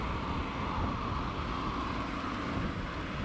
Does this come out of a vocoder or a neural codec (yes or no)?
no